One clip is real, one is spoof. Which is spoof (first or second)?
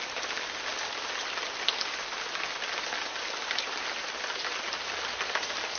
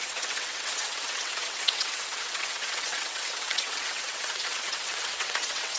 second